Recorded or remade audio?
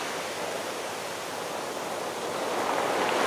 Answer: recorded